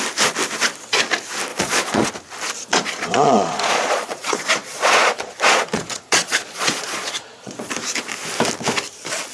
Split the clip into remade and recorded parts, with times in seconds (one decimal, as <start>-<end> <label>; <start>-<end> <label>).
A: 0.0-1.5 recorded; 1.5-2.1 remade; 2.1-2.7 recorded; 2.7-7.7 remade; 7.7-9.3 recorded